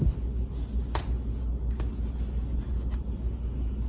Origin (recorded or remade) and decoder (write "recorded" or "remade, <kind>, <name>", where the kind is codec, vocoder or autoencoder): recorded